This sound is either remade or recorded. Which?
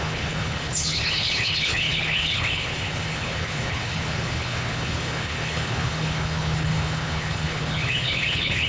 remade